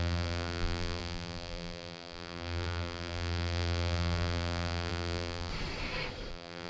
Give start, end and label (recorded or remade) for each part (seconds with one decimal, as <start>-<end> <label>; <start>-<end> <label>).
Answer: 0.0-5.5 remade; 5.5-6.3 recorded; 6.3-6.7 remade